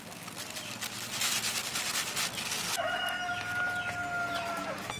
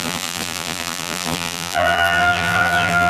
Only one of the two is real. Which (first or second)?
first